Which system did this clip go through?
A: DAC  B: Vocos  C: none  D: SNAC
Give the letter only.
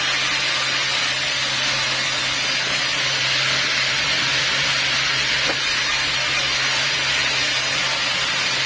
C